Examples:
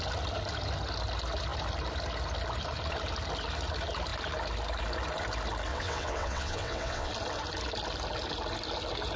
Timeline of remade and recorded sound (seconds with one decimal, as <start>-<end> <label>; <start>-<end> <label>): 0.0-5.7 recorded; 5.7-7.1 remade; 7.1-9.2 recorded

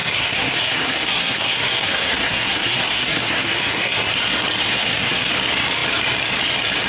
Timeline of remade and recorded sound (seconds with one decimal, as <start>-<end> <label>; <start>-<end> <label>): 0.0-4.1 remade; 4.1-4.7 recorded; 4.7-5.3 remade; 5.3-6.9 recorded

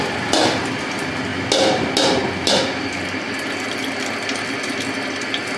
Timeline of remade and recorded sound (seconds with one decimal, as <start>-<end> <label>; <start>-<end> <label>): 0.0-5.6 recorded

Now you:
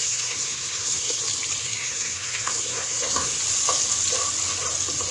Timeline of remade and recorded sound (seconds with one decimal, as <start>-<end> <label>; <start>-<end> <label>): 0.0-1.2 remade; 1.2-1.6 recorded; 1.6-3.4 remade; 3.4-5.1 recorded

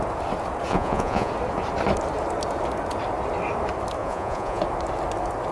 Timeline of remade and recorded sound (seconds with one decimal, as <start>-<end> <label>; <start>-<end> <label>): 0.0-0.7 recorded; 0.7-1.3 remade; 1.3-4.0 recorded; 4.0-4.6 remade; 4.6-5.5 recorded

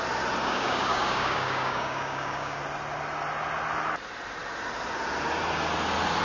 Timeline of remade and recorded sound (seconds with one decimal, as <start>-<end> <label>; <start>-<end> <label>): 0.0-0.4 recorded; 0.4-2.6 remade; 2.6-6.2 recorded

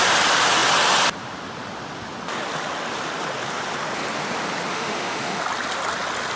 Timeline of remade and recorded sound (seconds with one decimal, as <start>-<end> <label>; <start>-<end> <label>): 0.0-4.7 recorded; 4.7-5.4 remade; 5.4-6.4 recorded

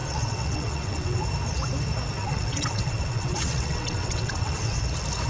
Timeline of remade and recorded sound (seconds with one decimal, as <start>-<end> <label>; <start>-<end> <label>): 0.0-1.2 remade; 1.2-2.2 recorded; 2.2-4.8 remade; 4.8-5.3 recorded